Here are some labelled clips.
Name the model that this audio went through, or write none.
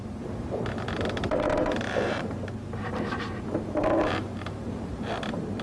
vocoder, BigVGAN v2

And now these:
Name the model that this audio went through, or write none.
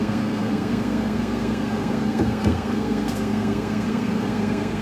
codec, SNAC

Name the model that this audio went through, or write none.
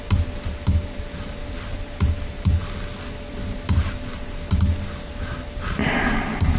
none